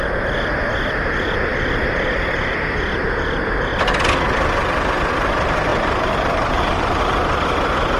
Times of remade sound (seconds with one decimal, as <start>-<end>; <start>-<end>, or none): 5.7-7.0